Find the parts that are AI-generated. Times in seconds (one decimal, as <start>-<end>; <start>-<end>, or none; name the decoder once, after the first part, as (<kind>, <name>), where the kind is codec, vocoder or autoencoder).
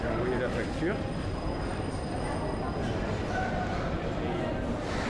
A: none